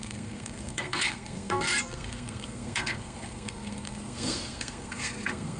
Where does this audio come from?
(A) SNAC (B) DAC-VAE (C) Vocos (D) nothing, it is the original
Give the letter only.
A